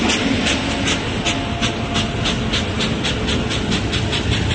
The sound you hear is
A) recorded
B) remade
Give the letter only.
A